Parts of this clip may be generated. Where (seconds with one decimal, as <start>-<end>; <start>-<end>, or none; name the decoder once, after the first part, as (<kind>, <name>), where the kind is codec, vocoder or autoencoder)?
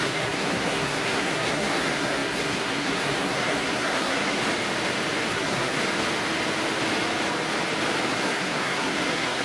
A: 0.0-4.4 (codec, SNAC); 5.3-5.8; 8.1-9.4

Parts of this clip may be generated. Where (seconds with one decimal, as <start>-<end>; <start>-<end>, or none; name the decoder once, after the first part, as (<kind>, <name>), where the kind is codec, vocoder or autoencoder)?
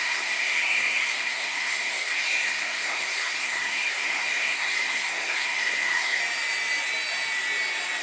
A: 0.0-6.2 (codec, SNAC)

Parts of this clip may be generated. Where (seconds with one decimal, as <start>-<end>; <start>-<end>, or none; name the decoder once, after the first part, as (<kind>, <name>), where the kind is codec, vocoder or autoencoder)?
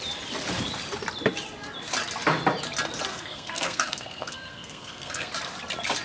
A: 3.1-5.3 (codec, SNAC)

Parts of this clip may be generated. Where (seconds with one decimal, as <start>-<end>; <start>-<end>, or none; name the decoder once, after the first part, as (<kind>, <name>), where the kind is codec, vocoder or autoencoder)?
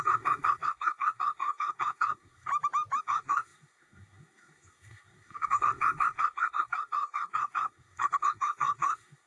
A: 0.0-2.5 (codec, SNAC); 3.0-9.3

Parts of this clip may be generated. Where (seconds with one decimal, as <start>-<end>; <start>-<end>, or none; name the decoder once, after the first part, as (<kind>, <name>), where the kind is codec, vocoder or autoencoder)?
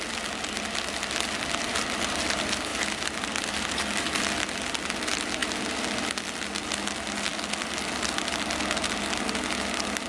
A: none